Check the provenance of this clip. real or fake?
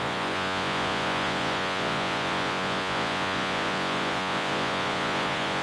fake